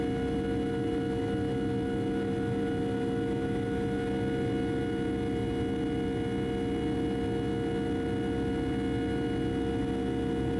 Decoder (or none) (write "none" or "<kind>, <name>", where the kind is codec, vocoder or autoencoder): none